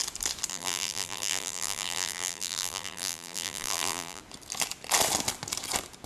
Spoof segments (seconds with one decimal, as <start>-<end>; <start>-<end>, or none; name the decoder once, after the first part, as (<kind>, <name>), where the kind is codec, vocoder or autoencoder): 0.5-4.2 (vocoder, BigVGAN v2)